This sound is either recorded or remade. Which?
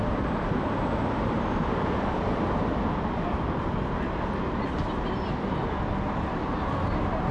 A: recorded